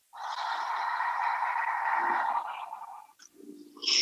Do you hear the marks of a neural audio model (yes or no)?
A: no